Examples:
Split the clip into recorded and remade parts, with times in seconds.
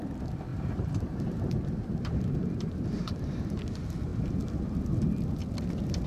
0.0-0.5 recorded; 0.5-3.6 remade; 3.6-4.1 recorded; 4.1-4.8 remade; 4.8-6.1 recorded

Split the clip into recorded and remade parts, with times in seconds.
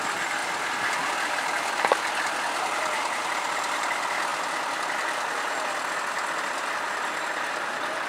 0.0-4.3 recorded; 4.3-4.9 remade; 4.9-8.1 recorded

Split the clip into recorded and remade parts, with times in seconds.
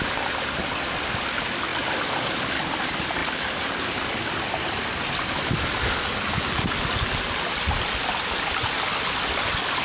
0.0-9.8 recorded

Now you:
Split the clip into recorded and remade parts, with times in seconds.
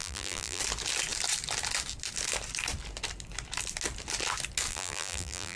0.0-0.6 remade; 0.6-4.7 recorded; 4.7-5.6 remade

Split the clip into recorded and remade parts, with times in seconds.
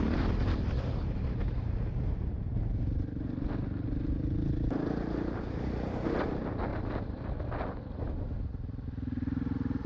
0.0-6.7 recorded; 6.7-8.0 remade; 8.0-9.9 recorded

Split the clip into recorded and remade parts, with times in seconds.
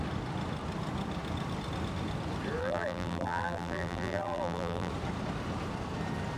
0.0-2.6 recorded; 2.6-4.9 remade; 4.9-6.4 recorded